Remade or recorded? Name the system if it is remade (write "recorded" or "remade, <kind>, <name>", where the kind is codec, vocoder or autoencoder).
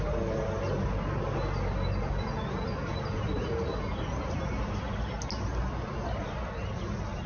recorded